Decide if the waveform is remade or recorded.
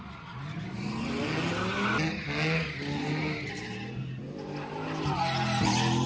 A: recorded